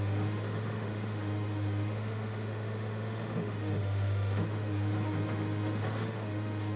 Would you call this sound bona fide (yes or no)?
no